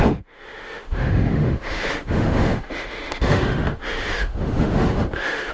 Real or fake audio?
fake